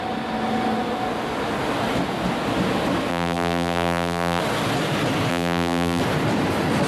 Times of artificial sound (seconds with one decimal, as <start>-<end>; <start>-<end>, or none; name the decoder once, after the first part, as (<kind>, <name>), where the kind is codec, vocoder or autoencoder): 3.1-4.4 (vocoder, BigVGAN v2); 5.3-6.0